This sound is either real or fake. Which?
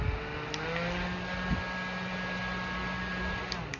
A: real